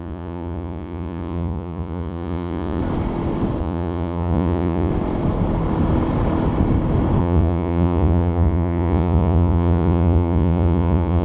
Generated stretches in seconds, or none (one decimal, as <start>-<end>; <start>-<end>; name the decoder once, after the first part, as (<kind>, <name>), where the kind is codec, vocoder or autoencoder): 0.0-2.8 (vocoder, Vocos); 3.6-4.9; 7.2-11.2